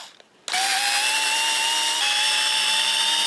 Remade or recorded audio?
recorded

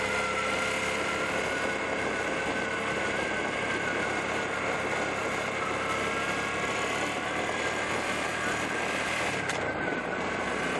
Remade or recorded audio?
recorded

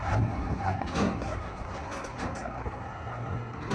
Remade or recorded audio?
remade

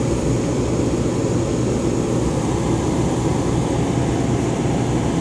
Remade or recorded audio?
recorded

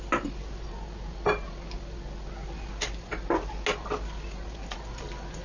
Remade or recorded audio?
recorded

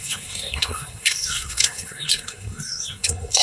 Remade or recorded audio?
remade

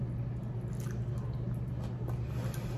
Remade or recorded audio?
recorded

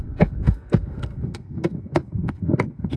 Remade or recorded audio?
remade